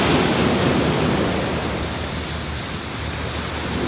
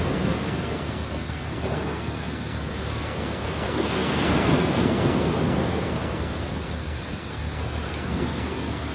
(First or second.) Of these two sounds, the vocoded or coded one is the second